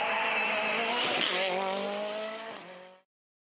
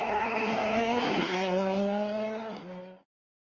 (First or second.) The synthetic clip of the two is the second